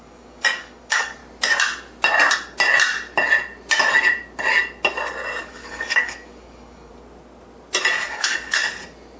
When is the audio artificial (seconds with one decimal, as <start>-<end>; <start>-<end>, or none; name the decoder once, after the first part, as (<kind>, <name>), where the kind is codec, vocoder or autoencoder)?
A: 0.0-1.2 (codec, DAC); 5.4-6.9; 7.8-8.6